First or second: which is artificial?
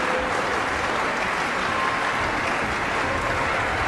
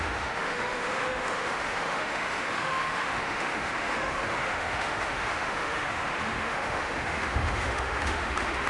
second